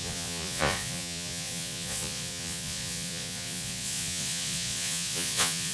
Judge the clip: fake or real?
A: fake